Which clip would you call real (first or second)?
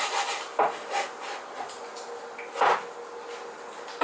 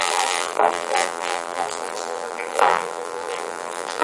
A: first